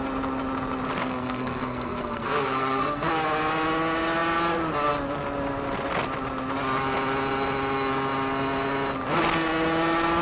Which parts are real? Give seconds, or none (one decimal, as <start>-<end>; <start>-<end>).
0.0-1.0; 3.1-10.2